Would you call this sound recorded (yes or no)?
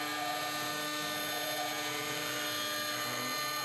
yes